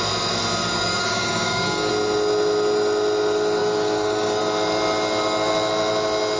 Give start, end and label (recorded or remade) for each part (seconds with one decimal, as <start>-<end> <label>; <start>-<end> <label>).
0.0-0.6 recorded; 0.6-1.9 remade; 1.9-3.6 recorded; 3.6-4.4 remade; 4.4-6.4 recorded